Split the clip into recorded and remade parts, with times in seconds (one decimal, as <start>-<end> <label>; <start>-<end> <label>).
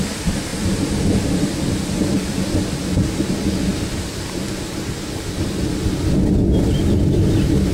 0.0-0.5 recorded; 0.5-1.7 remade; 1.7-7.7 recorded